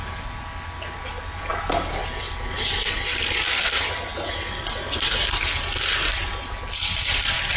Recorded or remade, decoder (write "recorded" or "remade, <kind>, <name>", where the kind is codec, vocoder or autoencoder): recorded